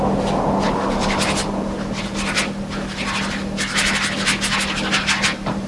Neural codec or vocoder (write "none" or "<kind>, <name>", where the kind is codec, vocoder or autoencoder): none